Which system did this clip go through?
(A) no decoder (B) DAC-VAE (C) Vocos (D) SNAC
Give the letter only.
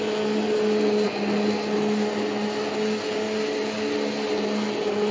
A